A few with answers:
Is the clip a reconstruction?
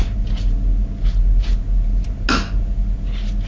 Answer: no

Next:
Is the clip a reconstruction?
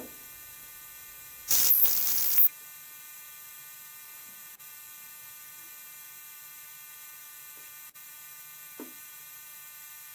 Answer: yes